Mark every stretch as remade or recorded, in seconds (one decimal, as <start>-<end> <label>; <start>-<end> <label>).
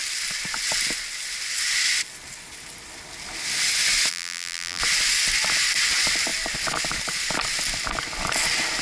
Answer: 0.0-4.1 recorded; 4.1-4.8 remade; 4.8-8.8 recorded